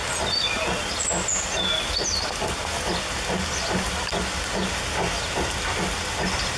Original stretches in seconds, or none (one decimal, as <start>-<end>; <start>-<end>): 0.0-6.6